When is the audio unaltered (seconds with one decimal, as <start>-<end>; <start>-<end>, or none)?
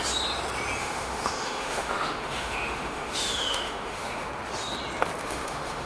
0.0-0.8; 4.3-5.2